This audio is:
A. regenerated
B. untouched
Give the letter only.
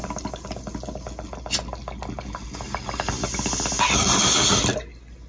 B